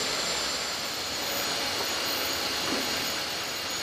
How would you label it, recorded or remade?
remade